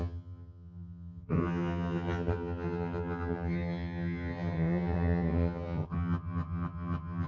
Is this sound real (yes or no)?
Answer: no